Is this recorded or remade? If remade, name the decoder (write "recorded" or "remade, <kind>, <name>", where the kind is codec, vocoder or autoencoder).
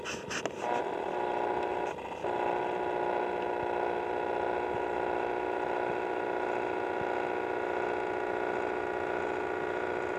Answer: recorded